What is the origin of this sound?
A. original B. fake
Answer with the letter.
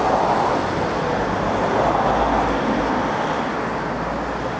A